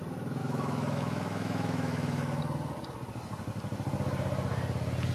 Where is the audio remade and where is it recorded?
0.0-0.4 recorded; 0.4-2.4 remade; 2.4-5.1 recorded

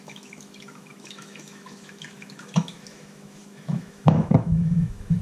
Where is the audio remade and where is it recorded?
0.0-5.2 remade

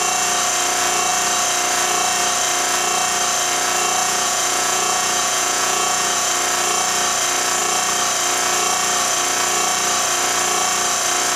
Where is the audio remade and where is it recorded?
0.0-4.0 recorded; 4.0-6.3 remade; 6.3-11.4 recorded